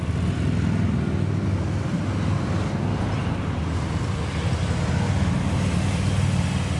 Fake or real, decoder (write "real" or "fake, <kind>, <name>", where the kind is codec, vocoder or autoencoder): real